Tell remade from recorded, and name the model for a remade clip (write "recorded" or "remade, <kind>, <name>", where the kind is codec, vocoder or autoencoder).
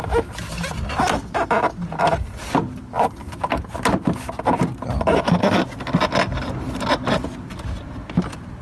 recorded